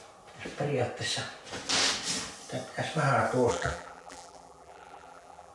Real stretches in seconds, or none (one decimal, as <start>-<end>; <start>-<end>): 0.0-3.5